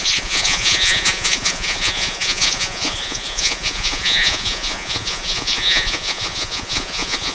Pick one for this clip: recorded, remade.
remade